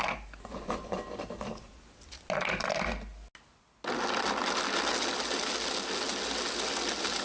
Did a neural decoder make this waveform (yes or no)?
no